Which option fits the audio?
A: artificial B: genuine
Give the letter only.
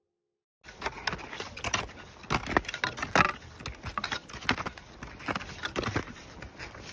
B